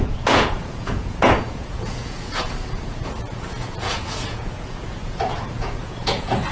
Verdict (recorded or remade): remade